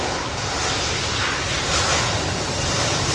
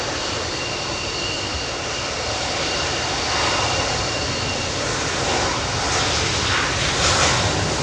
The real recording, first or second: second